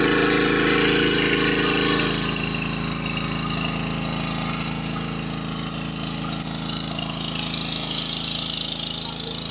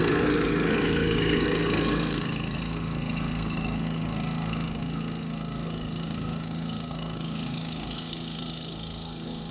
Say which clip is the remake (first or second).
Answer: second